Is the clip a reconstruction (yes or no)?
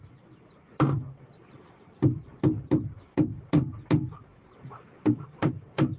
yes